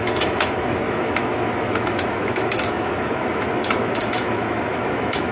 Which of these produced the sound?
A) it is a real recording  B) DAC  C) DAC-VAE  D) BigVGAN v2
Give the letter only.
C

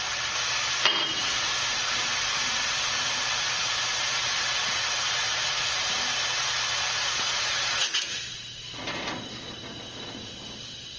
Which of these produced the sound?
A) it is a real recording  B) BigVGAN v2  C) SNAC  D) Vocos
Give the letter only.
A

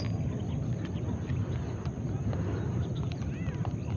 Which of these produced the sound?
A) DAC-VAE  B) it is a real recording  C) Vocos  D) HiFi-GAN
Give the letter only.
B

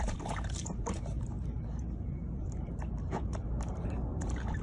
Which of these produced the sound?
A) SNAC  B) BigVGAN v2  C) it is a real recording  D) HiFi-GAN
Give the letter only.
B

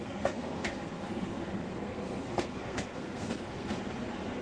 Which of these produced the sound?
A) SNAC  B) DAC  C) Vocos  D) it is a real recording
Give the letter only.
A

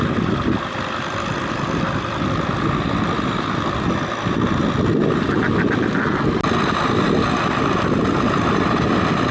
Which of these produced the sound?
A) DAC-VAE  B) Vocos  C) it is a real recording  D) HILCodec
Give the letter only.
C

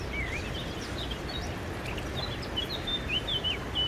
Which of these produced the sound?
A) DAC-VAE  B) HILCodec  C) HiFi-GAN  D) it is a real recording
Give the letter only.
D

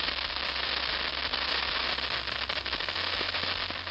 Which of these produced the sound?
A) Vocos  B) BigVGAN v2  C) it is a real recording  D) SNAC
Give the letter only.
C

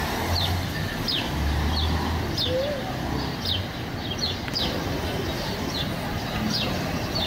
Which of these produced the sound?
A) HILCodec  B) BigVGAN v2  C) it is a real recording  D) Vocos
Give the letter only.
C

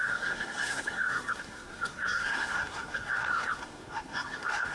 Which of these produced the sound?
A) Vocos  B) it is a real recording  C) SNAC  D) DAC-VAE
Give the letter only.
C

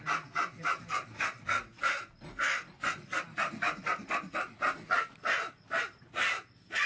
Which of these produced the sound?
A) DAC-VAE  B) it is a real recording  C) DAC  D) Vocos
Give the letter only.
B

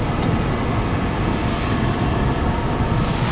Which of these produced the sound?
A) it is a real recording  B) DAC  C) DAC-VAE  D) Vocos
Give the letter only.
A